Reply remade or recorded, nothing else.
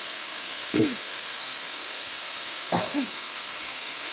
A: remade